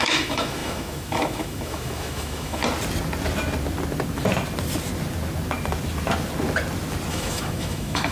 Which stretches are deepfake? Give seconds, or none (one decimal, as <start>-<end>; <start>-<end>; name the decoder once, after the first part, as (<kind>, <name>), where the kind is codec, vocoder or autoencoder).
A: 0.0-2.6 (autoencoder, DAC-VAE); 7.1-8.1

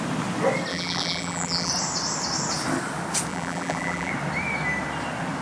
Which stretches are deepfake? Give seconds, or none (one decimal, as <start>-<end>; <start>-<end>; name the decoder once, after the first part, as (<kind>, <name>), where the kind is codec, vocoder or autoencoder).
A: 0.7-1.7 (vocoder, BigVGAN v2); 3.3-4.1

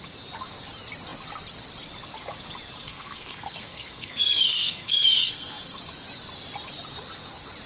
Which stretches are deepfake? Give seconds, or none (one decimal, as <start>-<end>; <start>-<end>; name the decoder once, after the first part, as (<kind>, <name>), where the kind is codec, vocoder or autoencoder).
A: 2.8-5.8 (codec, SNAC)

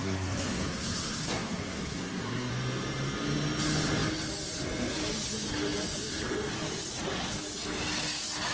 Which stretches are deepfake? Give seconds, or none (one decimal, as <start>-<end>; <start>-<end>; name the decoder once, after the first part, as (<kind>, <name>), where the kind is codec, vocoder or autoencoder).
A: 0.0-2.5 (codec, SNAC)

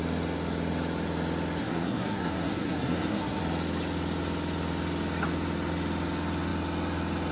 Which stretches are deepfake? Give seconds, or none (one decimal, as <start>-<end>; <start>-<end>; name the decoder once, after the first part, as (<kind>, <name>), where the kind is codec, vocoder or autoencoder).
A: 1.6-3.4 (codec, SNAC)